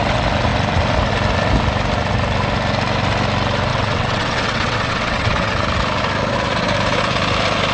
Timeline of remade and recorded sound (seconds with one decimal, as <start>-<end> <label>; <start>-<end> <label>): 0.0-3.7 recorded; 3.7-5.5 remade; 5.5-7.7 recorded

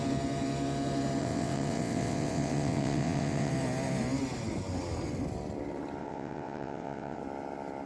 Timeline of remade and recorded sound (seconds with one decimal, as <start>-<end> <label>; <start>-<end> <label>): 0.0-1.2 recorded; 1.2-3.5 remade; 3.5-6.0 recorded; 6.0-7.2 remade; 7.2-7.9 recorded

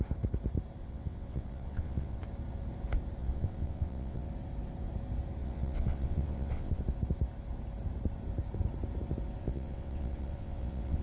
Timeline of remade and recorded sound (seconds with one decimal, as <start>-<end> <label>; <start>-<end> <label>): 0.0-0.8 recorded; 0.8-2.2 remade; 2.2-3.2 recorded; 3.2-4.3 remade; 4.3-5.4 recorded; 5.4-6.8 remade; 6.8-9.4 recorded; 9.4-11.0 remade

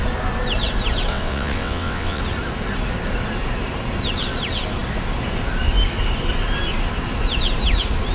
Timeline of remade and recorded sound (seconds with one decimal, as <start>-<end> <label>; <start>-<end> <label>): 0.0-1.1 recorded; 1.1-2.2 remade; 2.2-8.1 recorded